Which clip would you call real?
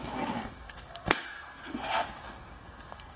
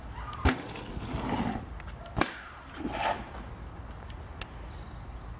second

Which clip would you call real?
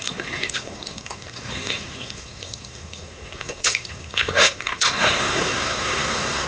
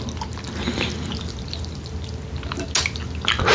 second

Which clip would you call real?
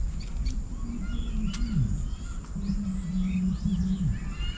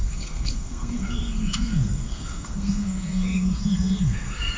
first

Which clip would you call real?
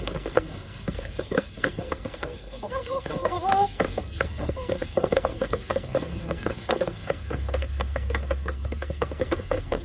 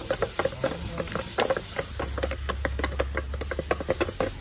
second